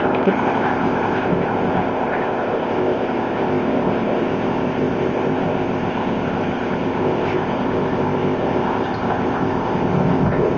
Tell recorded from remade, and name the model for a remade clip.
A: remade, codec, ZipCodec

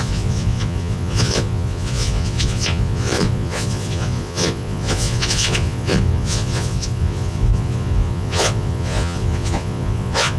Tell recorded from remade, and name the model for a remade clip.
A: remade, vocoder, Vocos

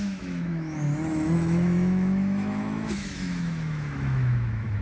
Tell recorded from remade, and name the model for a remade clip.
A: remade, autoencoder, DAC-VAE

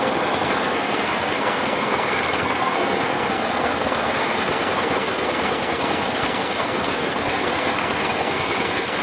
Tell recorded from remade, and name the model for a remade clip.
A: remade, codec, SNAC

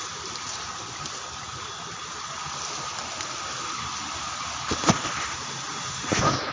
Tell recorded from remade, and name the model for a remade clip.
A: recorded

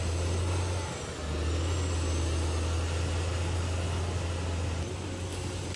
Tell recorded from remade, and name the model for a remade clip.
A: recorded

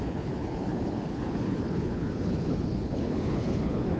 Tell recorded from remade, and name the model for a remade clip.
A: remade, codec, HILCodec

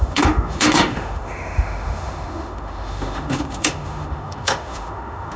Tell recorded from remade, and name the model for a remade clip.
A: remade, autoencoder, DAC-VAE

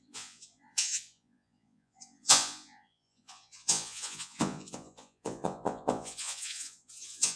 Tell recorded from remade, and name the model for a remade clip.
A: remade, vocoder, Vocos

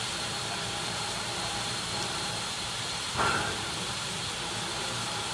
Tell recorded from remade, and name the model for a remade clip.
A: remade, vocoder, BigVGAN v2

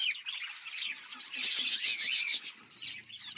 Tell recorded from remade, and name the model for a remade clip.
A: recorded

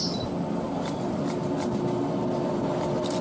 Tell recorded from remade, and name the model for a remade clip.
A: recorded